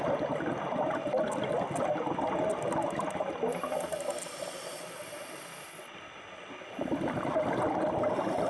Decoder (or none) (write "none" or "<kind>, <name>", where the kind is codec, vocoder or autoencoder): none